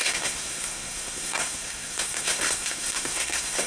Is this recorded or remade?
remade